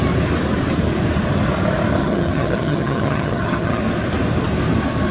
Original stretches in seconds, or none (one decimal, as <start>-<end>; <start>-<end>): 0.0-2.0; 3.8-5.1